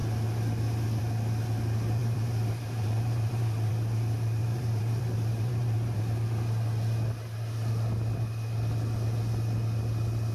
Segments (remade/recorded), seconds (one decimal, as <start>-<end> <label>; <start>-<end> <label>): 0.0-2.0 recorded; 2.0-3.7 remade; 3.7-4.4 recorded; 4.4-6.0 remade; 6.0-10.3 recorded